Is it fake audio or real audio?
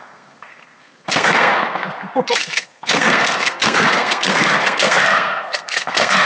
fake